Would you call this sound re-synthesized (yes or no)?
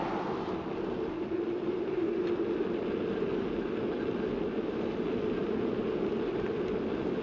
no